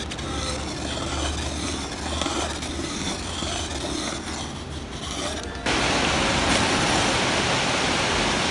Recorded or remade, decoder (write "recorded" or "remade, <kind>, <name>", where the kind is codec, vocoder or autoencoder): recorded